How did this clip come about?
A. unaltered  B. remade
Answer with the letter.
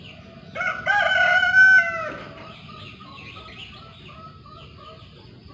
A